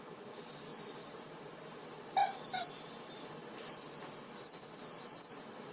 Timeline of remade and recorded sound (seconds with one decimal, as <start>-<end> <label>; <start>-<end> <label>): 0.0-5.7 recorded